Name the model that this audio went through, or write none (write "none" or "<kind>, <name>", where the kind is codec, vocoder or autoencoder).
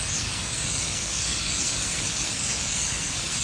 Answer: codec, SNAC